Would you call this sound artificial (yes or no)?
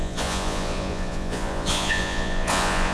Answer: yes